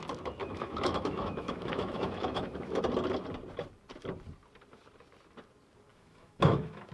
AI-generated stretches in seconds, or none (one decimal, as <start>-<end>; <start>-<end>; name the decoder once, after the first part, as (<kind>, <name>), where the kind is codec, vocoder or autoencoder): 0.4-2.8 (autoencoder, DAC-VAE); 5.9-6.9